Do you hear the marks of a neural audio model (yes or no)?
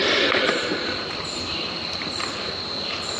no